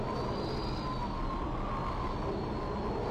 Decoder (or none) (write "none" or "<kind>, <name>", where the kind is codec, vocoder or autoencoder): none